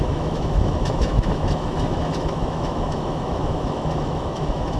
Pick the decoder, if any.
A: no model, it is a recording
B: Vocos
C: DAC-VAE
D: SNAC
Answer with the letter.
C